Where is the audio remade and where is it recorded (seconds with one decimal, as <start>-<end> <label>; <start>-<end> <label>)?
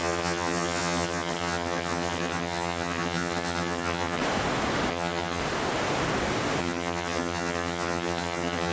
0.0-4.2 remade; 4.2-4.9 recorded; 4.9-5.4 remade; 5.4-6.6 recorded; 6.6-8.7 remade